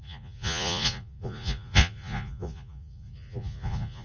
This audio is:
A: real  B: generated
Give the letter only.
B